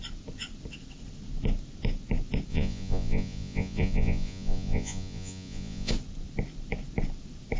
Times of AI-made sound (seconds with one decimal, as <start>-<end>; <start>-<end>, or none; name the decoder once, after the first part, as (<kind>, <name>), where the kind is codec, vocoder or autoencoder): 2.5-5.9 (vocoder, Vocos)